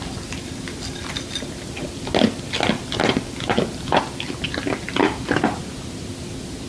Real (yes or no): yes